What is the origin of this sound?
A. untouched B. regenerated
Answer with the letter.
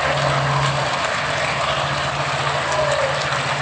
A